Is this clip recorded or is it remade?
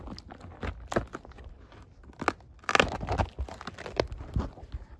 recorded